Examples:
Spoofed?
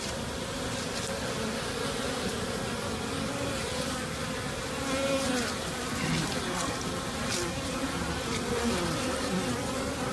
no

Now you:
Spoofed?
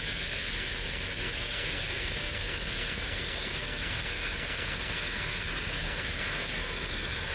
yes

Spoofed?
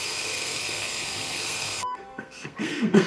yes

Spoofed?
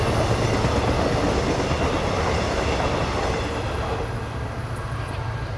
no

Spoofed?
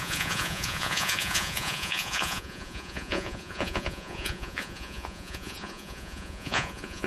yes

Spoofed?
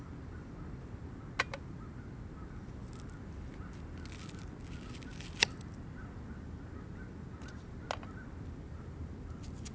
no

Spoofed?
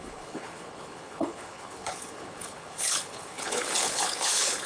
yes